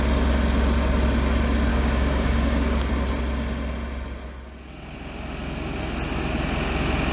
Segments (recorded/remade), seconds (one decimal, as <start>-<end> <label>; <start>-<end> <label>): 0.0-1.7 recorded; 1.7-2.9 remade; 2.9-7.1 recorded